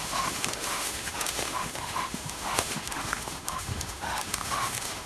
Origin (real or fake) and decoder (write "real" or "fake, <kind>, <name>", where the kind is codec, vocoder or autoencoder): fake, autoencoder, DAC-VAE